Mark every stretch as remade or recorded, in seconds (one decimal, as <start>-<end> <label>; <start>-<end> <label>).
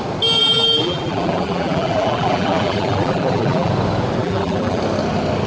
0.0-0.4 recorded; 0.4-3.7 remade; 3.7-4.2 recorded; 4.2-4.8 remade; 4.8-5.5 recorded